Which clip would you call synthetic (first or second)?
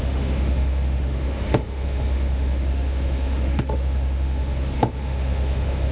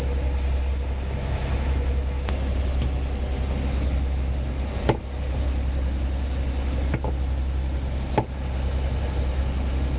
first